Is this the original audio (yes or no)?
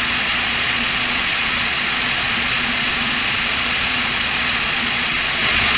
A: no